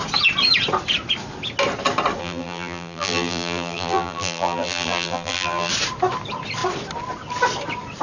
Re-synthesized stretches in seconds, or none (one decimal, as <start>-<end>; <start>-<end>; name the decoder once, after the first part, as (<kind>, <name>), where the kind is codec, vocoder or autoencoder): 2.2-5.7 (vocoder, BigVGAN v2)